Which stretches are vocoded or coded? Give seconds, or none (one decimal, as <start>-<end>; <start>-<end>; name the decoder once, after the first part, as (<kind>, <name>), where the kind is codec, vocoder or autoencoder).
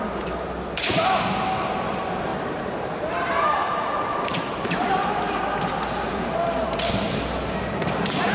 2.3-5.1 (vocoder, BigVGAN v2); 6.1-6.9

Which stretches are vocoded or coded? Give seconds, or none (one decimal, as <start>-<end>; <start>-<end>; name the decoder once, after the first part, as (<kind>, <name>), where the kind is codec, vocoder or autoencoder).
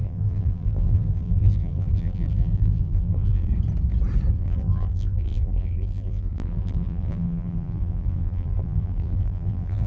0.0-3.5 (vocoder, BigVGAN v2); 4.3-9.9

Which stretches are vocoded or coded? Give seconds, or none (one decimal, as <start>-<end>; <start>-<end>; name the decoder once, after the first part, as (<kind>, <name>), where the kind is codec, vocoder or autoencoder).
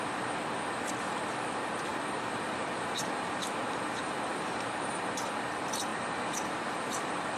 1.9-5.5 (vocoder, BigVGAN v2); 5.9-7.4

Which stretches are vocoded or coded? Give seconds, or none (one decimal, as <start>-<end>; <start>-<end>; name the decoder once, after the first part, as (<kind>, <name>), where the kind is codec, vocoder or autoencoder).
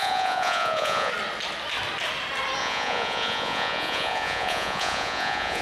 0.0-1.1 (vocoder, Vocos); 2.6-5.6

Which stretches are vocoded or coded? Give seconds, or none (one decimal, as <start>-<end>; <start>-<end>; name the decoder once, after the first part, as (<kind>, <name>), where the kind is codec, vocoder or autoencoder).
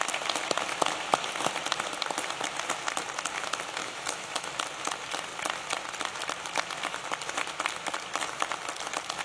3.8-4.5 (autoencoder, DAC-VAE)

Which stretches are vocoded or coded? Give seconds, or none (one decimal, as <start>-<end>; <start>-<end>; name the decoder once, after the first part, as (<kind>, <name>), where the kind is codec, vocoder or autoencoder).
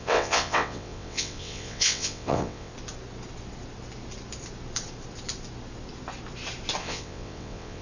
0.0-2.7 (vocoder, WaveNeXt); 6.8-7.8